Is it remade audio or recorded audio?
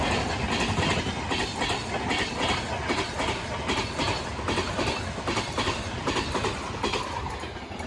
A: recorded